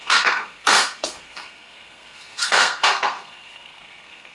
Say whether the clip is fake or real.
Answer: fake